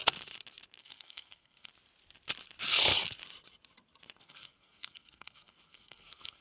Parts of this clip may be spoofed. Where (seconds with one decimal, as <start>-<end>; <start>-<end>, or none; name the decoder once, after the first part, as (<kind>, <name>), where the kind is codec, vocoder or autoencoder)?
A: 0.8-1.7 (codec, SNAC); 4.2-6.4